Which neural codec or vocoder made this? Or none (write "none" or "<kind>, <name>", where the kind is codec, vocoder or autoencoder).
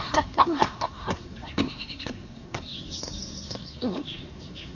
codec, SNAC